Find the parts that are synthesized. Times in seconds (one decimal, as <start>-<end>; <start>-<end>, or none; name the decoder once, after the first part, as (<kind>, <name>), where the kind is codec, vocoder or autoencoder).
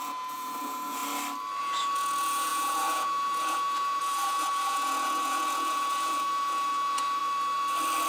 0.0-1.0 (vocoder, Vocos); 1.6-7.2